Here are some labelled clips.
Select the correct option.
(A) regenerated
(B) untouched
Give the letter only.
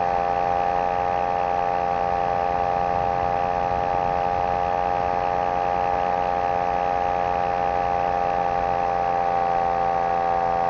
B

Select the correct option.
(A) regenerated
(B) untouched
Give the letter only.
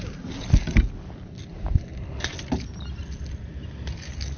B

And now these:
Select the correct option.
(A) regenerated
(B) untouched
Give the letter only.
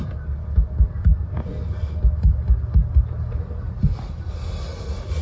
B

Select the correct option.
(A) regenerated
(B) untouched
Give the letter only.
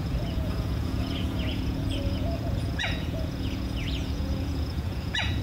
A